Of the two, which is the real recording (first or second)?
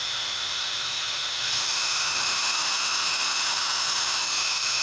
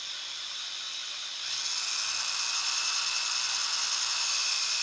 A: second